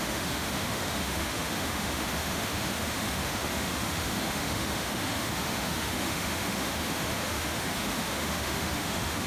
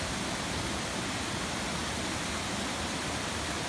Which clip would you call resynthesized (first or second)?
first